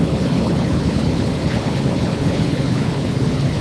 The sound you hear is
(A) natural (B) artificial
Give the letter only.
B